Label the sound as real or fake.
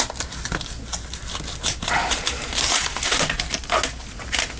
real